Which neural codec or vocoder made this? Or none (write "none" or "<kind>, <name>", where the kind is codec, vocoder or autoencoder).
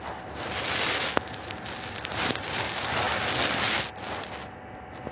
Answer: none